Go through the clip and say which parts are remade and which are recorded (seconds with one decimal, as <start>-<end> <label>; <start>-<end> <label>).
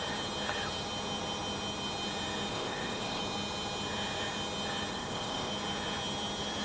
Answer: 0.0-2.5 recorded; 2.5-3.2 remade; 3.2-4.9 recorded; 4.9-5.5 remade; 5.5-6.6 recorded